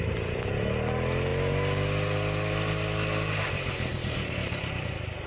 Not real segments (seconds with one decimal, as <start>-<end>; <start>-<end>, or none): none

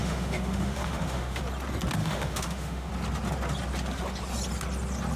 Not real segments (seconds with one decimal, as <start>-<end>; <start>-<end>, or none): 0.0-1.4; 2.0-2.9